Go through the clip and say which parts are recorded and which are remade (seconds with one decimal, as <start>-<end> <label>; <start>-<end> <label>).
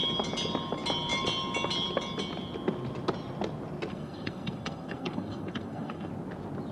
0.0-3.9 recorded; 3.9-6.1 remade; 6.1-6.7 recorded